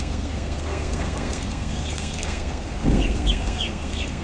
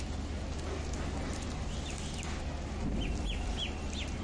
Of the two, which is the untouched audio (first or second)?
second